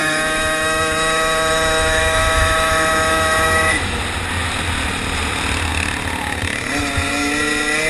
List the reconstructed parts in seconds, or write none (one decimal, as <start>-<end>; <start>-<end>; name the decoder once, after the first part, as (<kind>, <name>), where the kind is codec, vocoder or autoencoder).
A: 0.0-4.0 (autoencoder, DAC-VAE)